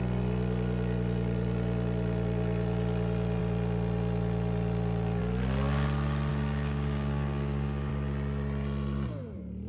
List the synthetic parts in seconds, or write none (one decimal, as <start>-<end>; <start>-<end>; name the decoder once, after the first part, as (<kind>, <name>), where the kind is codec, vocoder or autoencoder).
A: 6.3-7.9 (codec, DAC)